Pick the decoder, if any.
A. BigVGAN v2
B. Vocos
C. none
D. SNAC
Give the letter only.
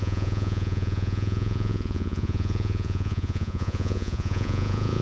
B